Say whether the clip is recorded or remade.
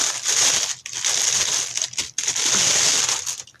recorded